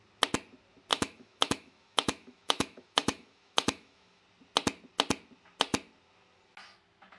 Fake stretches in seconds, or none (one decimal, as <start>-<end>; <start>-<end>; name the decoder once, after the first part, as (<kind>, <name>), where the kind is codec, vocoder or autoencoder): 0.9-4.2 (autoencoder, DAC-VAE)

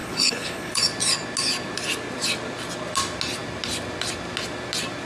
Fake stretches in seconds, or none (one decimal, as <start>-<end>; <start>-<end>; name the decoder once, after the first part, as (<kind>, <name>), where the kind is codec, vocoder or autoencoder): 0.0-0.8 (codec, HILCodec)

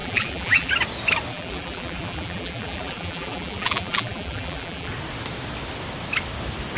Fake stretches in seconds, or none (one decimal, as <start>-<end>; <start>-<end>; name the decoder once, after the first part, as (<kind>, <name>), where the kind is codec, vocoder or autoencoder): 0.0-0.7 (vocoder, BigVGAN v2); 1.3-4.9

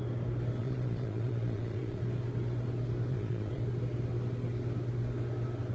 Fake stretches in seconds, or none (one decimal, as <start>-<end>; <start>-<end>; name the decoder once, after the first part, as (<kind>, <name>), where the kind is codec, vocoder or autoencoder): 0.6-2.0 (vocoder, Vocos); 3.1-3.6

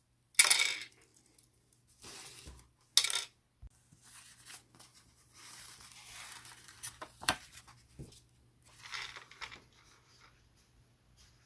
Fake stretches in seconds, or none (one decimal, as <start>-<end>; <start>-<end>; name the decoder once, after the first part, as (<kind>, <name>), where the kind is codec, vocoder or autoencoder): 4.9-7.6 (vocoder, BigVGAN v2)

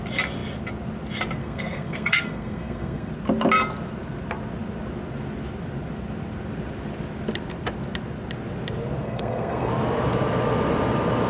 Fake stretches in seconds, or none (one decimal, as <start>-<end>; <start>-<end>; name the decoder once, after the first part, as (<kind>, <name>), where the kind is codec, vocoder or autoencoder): 1.4-3.1 (codec, SNAC); 9.0-9.7

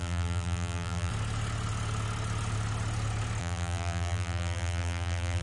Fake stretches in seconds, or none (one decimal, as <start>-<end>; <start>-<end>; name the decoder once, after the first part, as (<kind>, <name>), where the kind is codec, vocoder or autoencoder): 0.0-1.1 (vocoder, BigVGAN v2); 3.4-5.4